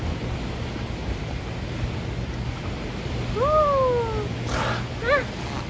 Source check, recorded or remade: recorded